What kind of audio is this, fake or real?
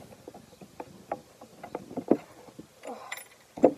real